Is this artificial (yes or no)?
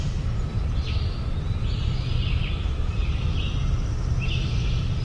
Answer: yes